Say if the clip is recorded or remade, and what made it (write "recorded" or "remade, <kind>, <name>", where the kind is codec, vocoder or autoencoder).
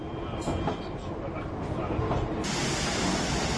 recorded